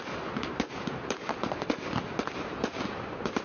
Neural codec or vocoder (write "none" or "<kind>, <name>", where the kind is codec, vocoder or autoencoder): none